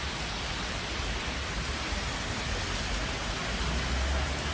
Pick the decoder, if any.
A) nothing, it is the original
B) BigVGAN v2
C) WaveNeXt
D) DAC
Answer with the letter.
A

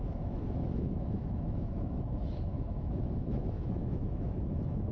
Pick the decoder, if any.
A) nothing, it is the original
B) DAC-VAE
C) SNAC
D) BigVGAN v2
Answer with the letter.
B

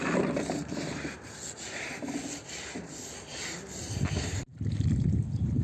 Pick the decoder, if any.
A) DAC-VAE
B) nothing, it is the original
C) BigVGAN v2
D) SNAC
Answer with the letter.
B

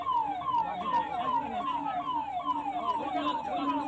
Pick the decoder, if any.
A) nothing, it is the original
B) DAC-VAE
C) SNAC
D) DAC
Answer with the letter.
A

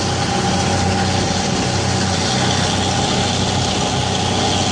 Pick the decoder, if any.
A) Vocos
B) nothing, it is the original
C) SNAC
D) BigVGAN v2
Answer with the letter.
B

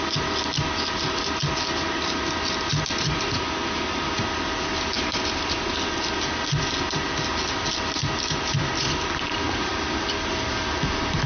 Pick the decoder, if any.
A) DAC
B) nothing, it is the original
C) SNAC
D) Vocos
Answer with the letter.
B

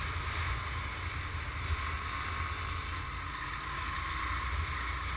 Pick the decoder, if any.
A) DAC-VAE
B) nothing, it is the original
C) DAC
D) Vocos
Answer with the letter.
B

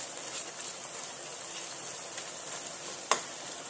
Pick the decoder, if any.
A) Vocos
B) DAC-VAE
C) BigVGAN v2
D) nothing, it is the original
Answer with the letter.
D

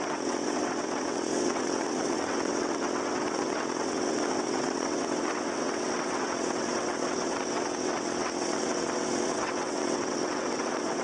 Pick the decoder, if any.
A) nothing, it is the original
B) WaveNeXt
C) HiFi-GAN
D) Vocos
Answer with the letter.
B